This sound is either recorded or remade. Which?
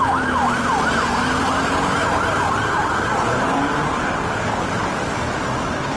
recorded